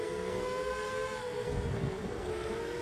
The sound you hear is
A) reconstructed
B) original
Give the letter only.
A